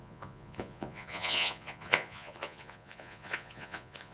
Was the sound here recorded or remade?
remade